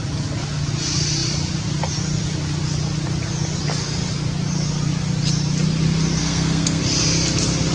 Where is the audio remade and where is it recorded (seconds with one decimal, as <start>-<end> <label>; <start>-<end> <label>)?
0.0-6.2 recorded; 6.2-6.8 remade; 6.8-7.7 recorded